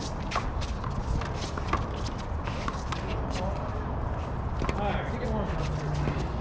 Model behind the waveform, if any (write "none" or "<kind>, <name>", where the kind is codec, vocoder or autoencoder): none